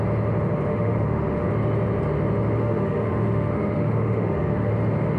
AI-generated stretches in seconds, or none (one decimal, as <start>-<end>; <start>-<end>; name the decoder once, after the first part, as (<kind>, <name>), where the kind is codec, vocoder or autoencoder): 0.7-1.5 (autoencoder, DAC-VAE); 2.6-4.7